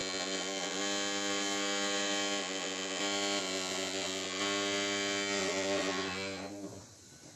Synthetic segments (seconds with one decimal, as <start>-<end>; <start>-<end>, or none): 0.0-0.8; 2.4-3.0; 3.4-4.4; 5.4-6.8